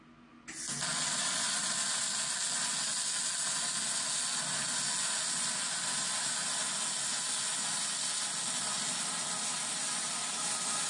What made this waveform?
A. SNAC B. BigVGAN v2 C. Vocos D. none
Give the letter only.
D